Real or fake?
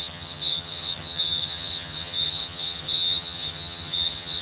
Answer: fake